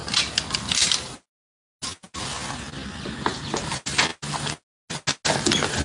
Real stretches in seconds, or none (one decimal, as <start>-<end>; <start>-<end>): 0.0-5.8